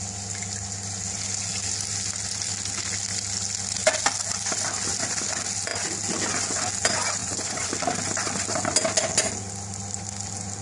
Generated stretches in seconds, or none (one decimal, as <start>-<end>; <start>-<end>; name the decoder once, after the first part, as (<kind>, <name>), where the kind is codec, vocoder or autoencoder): 7.2-7.7 (vocoder, Vocos)